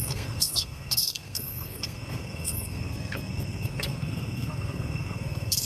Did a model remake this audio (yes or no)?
yes